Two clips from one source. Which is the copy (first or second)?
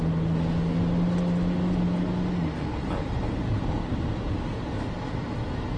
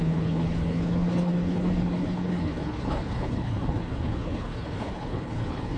second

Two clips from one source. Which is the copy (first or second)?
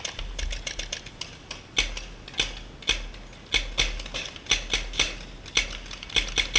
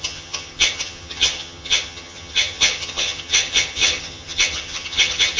second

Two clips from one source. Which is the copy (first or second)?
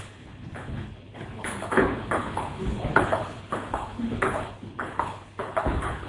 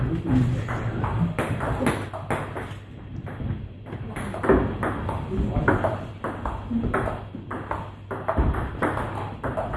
first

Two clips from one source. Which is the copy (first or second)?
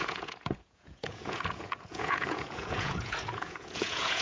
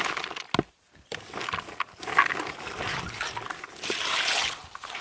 first